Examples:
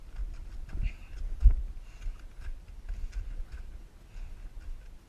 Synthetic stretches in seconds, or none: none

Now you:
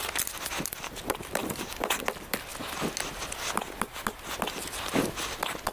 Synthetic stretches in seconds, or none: 1.4-2.0

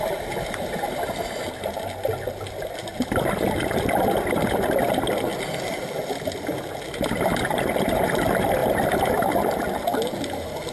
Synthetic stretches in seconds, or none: none